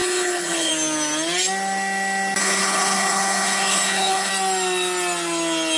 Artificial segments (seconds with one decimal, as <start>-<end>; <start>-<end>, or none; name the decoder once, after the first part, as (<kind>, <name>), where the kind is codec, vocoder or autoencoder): 0.0-0.7 (codec, HILCodec); 2.4-4.3